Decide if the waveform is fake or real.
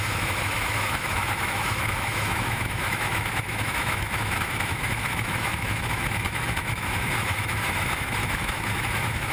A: fake